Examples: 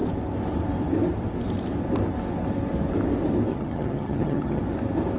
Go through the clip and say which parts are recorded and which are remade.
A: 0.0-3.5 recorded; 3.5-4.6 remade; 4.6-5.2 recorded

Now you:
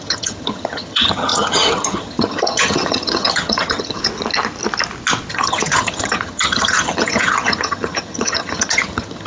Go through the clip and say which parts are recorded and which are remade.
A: 0.0-4.0 remade; 4.0-5.3 recorded; 5.3-9.3 remade

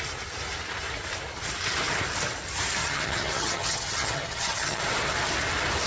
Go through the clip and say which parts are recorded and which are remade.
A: 0.0-2.8 recorded; 2.8-4.8 remade; 4.8-5.9 recorded

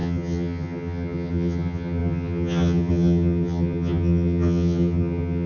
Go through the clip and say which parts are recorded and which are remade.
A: 0.0-5.5 remade

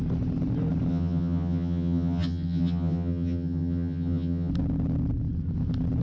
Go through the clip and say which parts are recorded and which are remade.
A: 0.0-0.9 recorded; 0.9-4.5 remade; 4.5-6.0 recorded

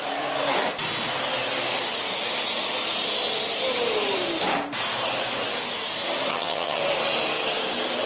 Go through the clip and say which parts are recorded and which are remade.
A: 0.0-6.3 recorded; 6.3-6.8 remade; 6.8-8.1 recorded